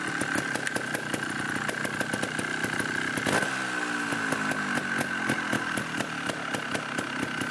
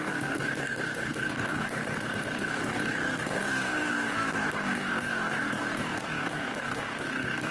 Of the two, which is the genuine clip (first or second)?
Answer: first